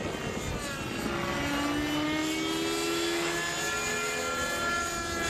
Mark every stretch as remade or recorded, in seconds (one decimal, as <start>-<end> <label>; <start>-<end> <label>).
0.0-5.3 recorded